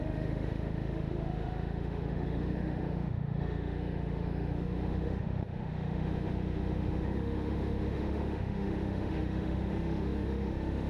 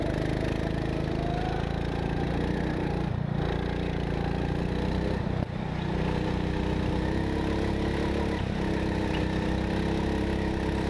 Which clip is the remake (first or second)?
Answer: first